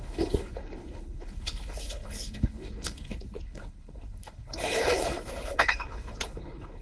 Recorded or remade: remade